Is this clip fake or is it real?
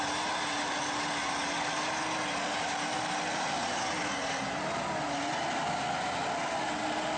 real